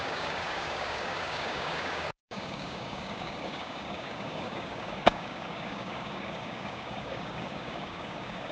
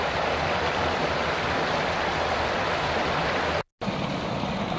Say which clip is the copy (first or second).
first